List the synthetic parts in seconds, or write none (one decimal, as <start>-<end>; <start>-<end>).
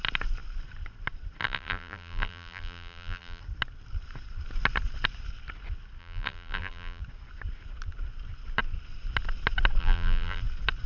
1.4-3.4; 6.0-7.0; 9.8-10.4